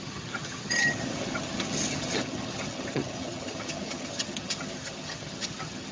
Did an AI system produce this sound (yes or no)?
yes